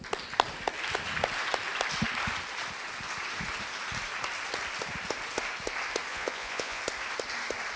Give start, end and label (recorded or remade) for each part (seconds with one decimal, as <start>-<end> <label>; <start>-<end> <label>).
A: 0.0-6.1 recorded; 6.1-6.8 remade; 6.8-7.8 recorded

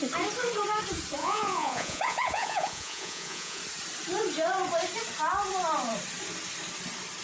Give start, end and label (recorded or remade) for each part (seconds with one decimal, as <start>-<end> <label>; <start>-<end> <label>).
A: 0.0-1.2 recorded; 1.2-3.6 remade; 3.6-7.2 recorded

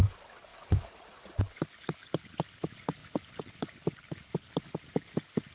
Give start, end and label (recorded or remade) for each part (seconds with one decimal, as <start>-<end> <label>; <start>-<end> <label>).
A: 0.0-0.5 recorded; 0.5-1.4 remade; 1.4-5.5 recorded

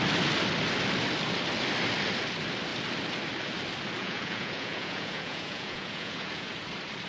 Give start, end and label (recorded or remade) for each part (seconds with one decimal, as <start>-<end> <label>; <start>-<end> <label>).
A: 0.0-4.0 recorded; 4.0-6.5 remade; 6.5-7.1 recorded

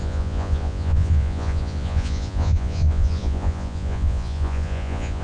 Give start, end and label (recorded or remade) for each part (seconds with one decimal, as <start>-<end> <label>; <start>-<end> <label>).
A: 0.0-5.2 remade

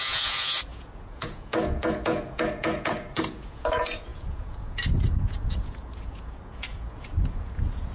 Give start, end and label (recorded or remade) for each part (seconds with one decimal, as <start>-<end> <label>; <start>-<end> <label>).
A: 0.0-7.9 remade

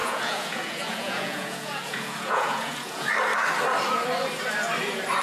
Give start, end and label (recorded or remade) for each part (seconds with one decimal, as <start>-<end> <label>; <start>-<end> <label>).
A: 0.0-3.1 remade; 3.1-5.2 recorded

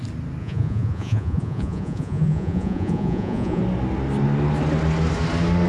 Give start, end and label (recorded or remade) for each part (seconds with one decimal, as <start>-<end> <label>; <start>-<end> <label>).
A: 0.0-0.4 recorded; 0.4-3.6 remade; 3.6-5.7 recorded